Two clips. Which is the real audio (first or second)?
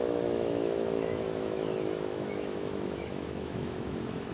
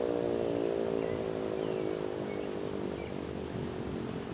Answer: second